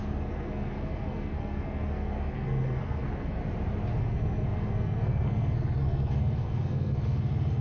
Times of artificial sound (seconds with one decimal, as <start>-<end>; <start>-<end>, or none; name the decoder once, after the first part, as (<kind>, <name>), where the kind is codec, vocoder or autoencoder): 0.0-3.4 (codec, SNAC); 4.0-7.6